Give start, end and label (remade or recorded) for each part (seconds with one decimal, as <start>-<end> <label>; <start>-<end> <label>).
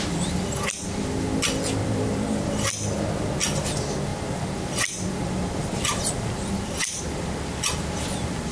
0.0-1.8 recorded; 1.8-2.5 remade; 2.5-4.1 recorded; 4.1-7.0 remade; 7.0-8.5 recorded